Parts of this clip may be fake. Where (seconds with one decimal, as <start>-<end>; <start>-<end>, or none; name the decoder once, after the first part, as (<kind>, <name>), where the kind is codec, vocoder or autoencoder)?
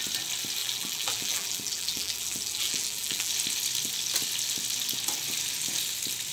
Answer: 0.6-3.3 (vocoder, BigVGAN v2)